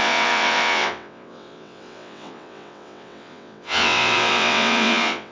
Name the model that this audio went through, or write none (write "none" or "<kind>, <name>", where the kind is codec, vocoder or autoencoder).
vocoder, WaveNeXt